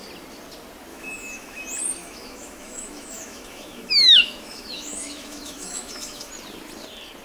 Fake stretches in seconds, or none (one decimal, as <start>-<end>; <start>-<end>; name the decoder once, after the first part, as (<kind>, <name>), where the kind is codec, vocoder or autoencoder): 0.9-1.6 (autoencoder, DAC-VAE); 2.0-6.3